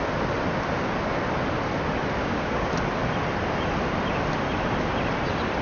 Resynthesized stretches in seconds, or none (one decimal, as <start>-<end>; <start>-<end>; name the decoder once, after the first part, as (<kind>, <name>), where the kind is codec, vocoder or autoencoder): 2.2-2.7 (codec, DAC)